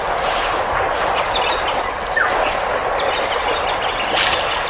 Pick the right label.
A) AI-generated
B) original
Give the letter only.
B